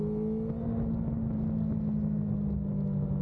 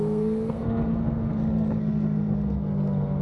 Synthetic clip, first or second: second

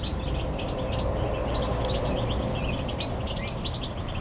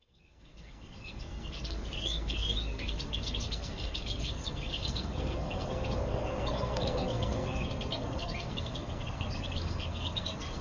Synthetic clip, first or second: second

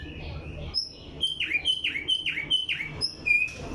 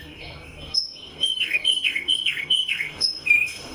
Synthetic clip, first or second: second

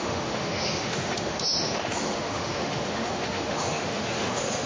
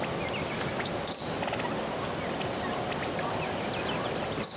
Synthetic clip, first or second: first